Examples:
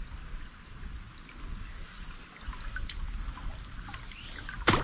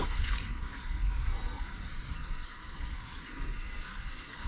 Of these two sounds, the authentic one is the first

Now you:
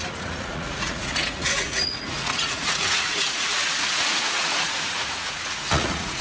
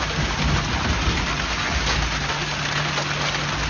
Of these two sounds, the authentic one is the second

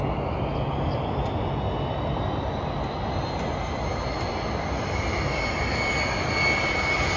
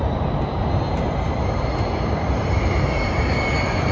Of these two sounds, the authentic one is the first